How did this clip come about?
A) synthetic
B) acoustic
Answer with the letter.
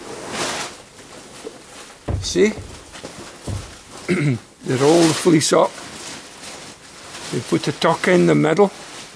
B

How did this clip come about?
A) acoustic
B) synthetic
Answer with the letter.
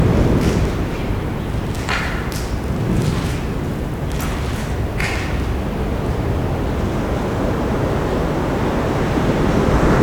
A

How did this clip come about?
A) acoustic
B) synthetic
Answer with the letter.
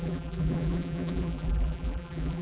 B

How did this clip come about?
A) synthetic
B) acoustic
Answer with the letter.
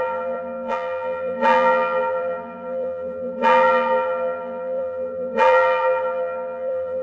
A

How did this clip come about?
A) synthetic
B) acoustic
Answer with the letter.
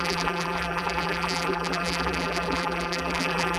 A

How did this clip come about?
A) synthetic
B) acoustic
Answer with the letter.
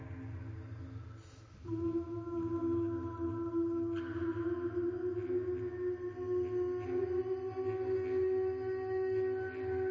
B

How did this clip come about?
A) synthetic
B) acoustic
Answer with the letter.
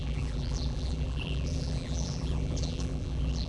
A